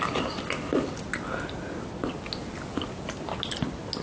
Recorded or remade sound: recorded